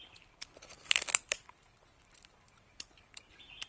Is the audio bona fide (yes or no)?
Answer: no